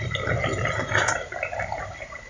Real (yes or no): yes